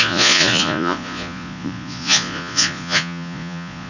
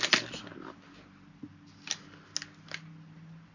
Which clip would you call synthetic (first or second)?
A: first